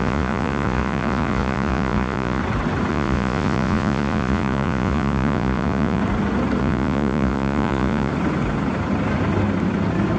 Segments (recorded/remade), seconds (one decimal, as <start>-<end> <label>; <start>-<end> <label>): 0.0-2.4 remade; 2.4-2.9 recorded; 2.9-6.0 remade; 6.0-6.6 recorded; 6.6-8.1 remade; 8.1-10.2 recorded